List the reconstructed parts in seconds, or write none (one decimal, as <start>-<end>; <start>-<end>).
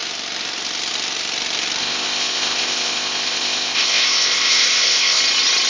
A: 1.8-5.2